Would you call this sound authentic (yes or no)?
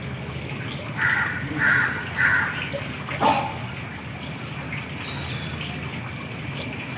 yes